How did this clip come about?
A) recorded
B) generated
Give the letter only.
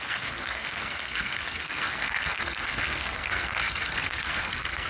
B